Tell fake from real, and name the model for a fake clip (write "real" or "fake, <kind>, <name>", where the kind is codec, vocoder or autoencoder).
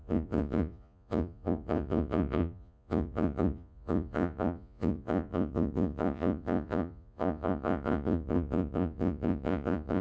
fake, vocoder, Vocos